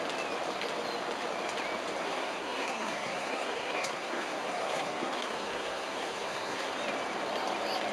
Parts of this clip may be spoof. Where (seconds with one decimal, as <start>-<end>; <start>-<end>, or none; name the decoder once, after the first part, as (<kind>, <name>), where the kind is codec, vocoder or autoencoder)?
2.0-6.7 (codec, SNAC)